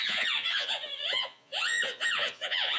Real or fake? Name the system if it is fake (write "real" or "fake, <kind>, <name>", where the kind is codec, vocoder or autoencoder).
fake, vocoder, Vocos